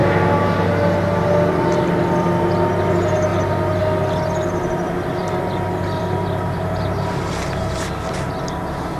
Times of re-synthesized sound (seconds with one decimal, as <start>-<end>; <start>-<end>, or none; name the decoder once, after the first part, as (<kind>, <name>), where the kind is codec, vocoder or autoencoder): none